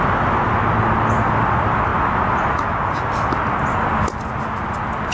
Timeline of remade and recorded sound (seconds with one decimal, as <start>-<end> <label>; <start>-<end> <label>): 0.0-5.1 recorded